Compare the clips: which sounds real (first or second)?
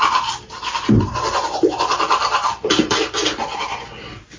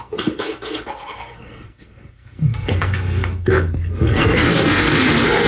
first